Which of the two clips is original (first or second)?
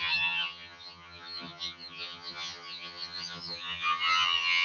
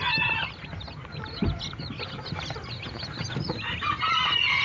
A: second